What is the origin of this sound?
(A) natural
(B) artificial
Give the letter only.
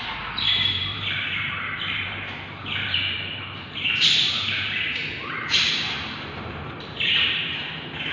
B